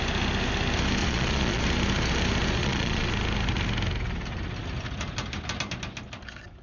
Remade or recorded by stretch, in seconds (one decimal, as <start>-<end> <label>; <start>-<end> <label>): 0.0-1.0 recorded; 1.0-1.6 remade; 1.6-2.6 recorded; 2.6-3.1 remade; 3.1-6.6 recorded